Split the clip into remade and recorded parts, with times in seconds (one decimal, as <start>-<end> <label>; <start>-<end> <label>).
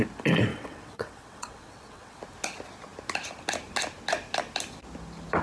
0.0-0.5 recorded; 0.5-2.2 remade; 2.2-5.4 recorded